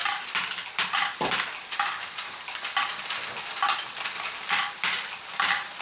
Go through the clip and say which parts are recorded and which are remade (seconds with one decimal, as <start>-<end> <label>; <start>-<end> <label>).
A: 0.0-5.8 recorded